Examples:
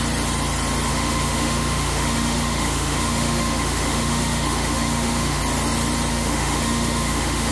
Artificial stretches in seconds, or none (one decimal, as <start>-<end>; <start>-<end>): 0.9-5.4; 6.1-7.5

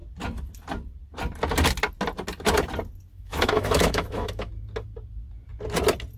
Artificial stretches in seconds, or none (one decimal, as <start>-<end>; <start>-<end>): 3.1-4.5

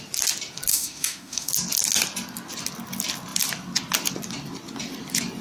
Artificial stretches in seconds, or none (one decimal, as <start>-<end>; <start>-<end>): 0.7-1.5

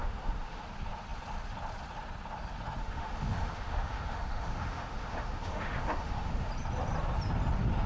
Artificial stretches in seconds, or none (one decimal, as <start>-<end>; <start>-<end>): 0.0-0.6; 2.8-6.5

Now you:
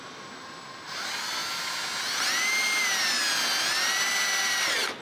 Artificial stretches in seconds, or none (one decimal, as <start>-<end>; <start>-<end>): none